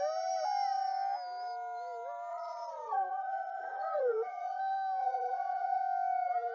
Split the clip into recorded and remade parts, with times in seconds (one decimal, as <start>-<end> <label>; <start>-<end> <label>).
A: 0.0-2.3 recorded; 2.3-4.6 remade; 4.6-5.0 recorded; 5.0-5.8 remade; 5.8-6.5 recorded